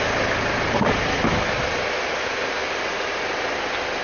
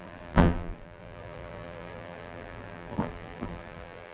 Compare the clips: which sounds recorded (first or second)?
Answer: first